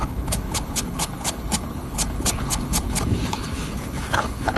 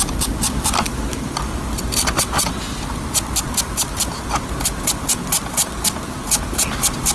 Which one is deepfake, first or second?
first